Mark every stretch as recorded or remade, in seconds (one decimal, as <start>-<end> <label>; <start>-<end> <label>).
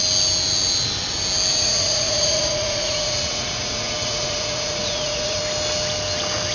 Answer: 0.0-1.5 recorded; 1.5-5.4 remade; 5.4-6.5 recorded